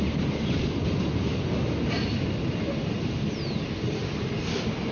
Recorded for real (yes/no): yes